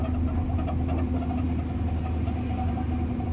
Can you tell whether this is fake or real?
real